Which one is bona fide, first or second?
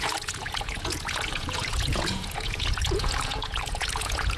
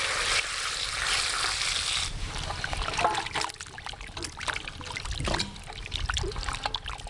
second